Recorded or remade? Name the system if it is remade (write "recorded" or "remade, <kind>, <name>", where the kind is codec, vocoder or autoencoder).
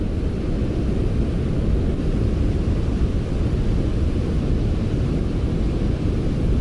recorded